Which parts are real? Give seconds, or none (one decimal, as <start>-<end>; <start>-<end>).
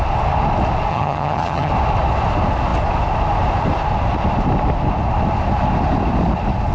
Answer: 0.0-0.9; 1.7-6.7